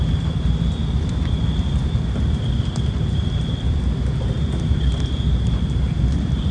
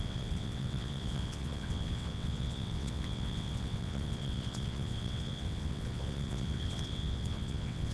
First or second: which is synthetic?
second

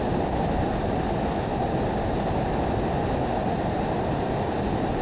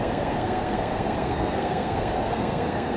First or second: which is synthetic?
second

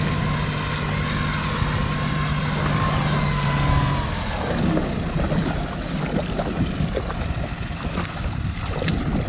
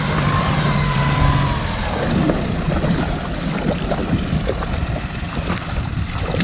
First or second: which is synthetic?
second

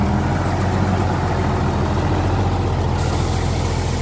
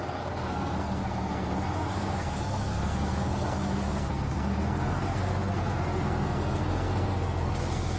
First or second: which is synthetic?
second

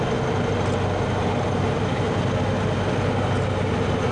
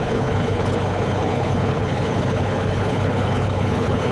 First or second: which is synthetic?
second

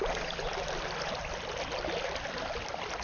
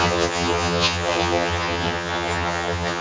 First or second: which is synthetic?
second